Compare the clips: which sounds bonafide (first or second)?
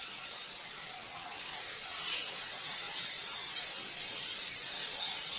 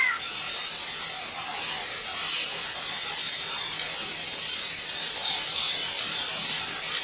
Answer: second